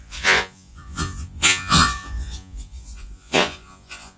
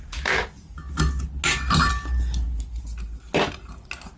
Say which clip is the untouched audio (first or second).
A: second